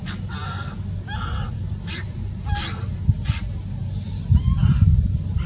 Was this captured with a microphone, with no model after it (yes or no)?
yes